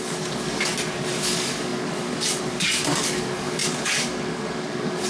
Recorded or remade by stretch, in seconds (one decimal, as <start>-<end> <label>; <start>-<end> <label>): 0.0-0.7 remade; 0.7-1.2 recorded; 1.2-5.1 remade